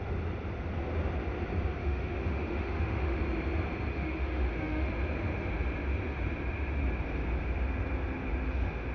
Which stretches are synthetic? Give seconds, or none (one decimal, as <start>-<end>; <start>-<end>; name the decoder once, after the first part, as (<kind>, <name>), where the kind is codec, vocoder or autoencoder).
1.8-3.2 (autoencoder, DAC-VAE); 3.9-4.9